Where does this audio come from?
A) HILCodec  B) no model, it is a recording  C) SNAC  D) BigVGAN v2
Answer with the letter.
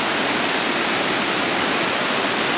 B